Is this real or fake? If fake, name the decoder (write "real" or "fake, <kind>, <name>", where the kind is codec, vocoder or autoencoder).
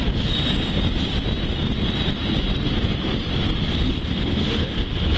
real